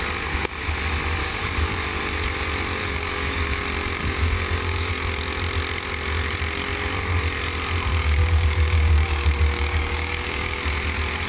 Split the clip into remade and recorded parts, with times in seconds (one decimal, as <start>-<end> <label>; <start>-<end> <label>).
0.0-1.2 recorded; 1.2-2.0 remade; 2.0-2.8 recorded; 2.8-3.6 remade; 3.6-4.0 recorded; 4.0-4.9 remade; 4.9-8.0 recorded; 8.0-10.6 remade; 10.6-11.3 recorded